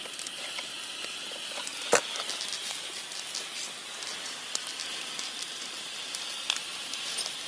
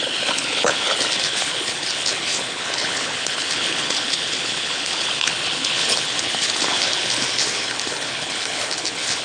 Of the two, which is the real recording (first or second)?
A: first